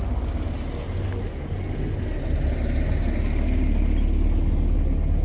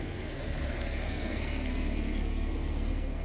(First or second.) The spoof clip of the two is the second